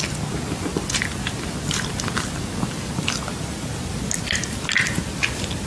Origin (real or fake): real